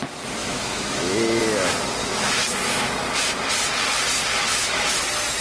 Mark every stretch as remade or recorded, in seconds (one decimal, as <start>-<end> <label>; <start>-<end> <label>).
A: 0.0-0.4 recorded; 0.4-1.4 remade; 1.4-2.0 recorded; 2.0-2.9 remade; 2.9-4.5 recorded; 4.5-5.0 remade; 5.0-5.4 recorded